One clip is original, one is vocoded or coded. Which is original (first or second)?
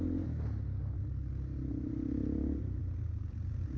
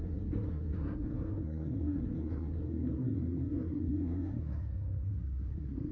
first